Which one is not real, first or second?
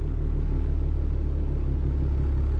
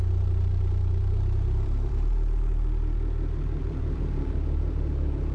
second